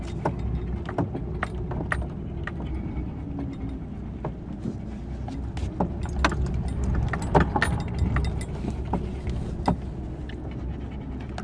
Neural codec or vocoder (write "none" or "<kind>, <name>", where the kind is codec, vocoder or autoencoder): none